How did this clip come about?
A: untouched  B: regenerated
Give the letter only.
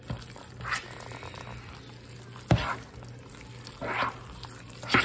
A